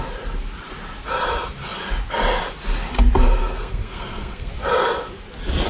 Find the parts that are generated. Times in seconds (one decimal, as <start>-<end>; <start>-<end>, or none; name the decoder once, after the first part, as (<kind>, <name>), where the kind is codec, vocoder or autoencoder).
3.4-4.5 (codec, SNAC)